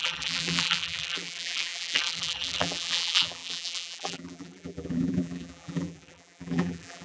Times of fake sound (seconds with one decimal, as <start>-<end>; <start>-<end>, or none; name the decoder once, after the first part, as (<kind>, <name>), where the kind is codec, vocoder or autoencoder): 0.0-7.0 (vocoder, BigVGAN v2)

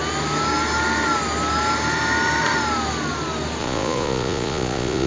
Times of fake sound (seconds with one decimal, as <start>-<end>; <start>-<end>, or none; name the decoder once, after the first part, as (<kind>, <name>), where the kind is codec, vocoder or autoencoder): 3.6-5.1 (vocoder, Vocos)

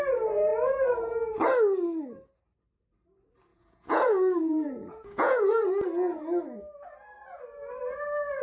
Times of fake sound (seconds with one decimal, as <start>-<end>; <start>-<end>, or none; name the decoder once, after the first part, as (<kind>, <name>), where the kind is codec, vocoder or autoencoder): 3.5-5.7 (vocoder, Vocos)

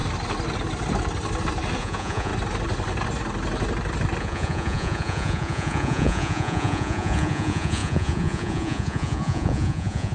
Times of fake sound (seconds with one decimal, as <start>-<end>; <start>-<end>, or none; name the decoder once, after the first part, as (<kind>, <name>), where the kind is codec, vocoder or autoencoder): 1.8-2.3 (vocoder, Vocos); 4.2-10.1

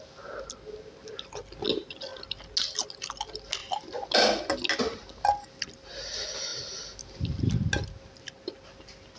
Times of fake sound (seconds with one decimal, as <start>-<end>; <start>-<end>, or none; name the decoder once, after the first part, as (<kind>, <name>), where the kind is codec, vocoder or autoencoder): none

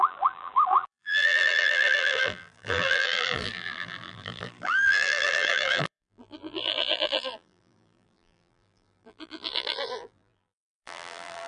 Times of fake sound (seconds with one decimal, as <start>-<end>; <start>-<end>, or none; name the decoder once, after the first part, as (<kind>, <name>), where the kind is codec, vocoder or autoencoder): 0.0-11.5 (vocoder, BigVGAN v2)

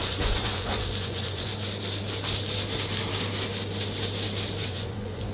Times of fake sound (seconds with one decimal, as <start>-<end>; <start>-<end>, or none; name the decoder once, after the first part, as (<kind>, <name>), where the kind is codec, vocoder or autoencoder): 0.0-1.5 (vocoder, Vocos); 4.7-5.3